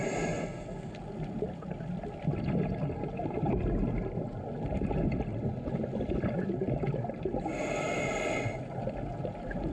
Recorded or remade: recorded